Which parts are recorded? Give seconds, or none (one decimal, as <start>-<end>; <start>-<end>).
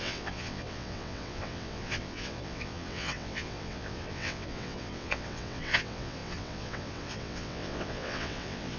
none